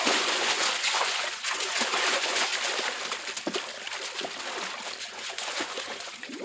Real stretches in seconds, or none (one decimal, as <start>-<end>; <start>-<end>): 2.5-5.0